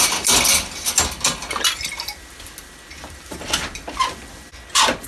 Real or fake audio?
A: real